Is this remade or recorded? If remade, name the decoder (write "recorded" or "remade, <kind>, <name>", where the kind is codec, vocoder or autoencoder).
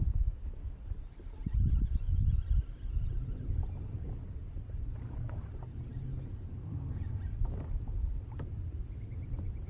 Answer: recorded